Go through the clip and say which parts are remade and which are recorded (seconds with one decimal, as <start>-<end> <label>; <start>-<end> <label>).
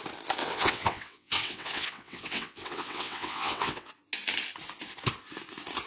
0.0-0.4 recorded; 0.4-3.9 remade; 3.9-5.9 recorded